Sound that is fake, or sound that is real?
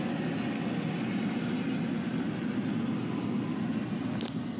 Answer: real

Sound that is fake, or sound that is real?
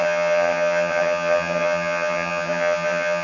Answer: fake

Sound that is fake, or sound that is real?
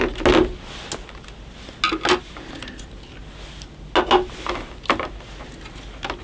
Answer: real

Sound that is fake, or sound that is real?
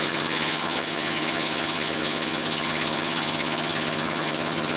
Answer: fake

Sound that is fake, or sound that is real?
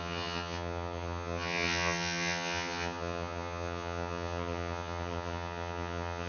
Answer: fake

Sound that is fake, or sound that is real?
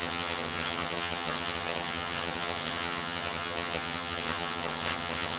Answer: fake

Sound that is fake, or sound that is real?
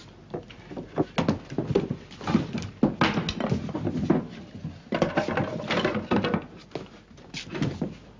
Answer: real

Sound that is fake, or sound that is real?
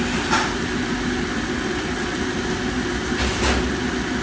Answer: real